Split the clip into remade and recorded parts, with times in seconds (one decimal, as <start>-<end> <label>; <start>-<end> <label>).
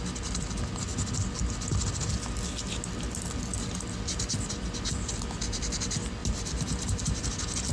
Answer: 0.0-6.2 recorded; 6.2-7.3 remade; 7.3-7.7 recorded